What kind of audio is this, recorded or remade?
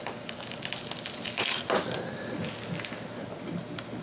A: recorded